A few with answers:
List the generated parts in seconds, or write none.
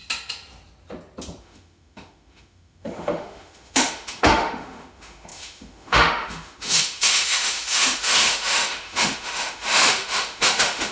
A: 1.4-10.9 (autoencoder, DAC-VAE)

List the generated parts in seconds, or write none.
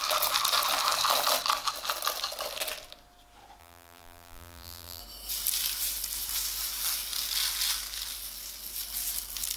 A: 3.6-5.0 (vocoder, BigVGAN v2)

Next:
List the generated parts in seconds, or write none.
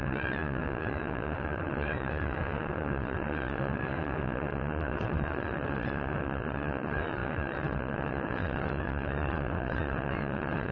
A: 0.0-10.7 (vocoder, WaveNeXt)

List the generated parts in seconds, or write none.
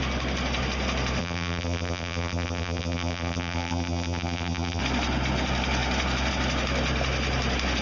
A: 1.2-4.8 (vocoder, BigVGAN v2)